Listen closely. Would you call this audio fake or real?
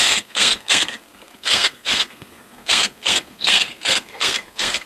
fake